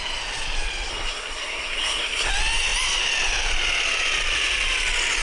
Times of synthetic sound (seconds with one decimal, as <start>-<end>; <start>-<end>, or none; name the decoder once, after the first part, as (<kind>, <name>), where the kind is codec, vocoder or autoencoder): 0.9-2.3 (codec, SNAC)